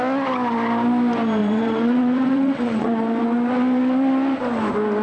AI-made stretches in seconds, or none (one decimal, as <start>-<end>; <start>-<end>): 1.4-3.0